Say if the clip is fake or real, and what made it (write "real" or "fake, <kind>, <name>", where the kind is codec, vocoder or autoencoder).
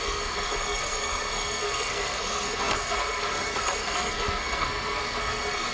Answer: fake, codec, SNAC